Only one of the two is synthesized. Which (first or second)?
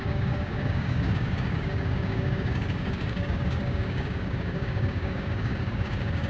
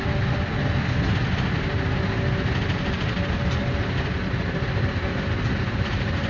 first